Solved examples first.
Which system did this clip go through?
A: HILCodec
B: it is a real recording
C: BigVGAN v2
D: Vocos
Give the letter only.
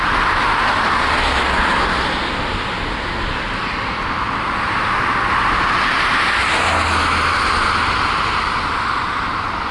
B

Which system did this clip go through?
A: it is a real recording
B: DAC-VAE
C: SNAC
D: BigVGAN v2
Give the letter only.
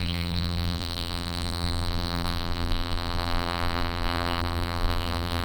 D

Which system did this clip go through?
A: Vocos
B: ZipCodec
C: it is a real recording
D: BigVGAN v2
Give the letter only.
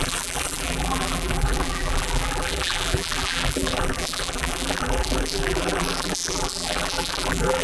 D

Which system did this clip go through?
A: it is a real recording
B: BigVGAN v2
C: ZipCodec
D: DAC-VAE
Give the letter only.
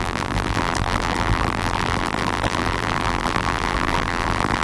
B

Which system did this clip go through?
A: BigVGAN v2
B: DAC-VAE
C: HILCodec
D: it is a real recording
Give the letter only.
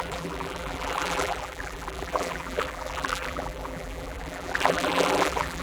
A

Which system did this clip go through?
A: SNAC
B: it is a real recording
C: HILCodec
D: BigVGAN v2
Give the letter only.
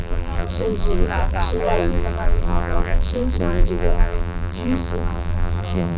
D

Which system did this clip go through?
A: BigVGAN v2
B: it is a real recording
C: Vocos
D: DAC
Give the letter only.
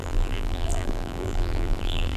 A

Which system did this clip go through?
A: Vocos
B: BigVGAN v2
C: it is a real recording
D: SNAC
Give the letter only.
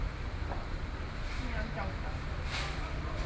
B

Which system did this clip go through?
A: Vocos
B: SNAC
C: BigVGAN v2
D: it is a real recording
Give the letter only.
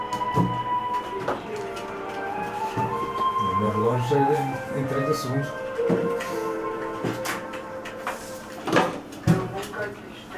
C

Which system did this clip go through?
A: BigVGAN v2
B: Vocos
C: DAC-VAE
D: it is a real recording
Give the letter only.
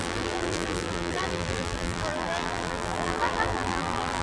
A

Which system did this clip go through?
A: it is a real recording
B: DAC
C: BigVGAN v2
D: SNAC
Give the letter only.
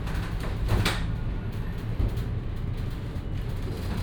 A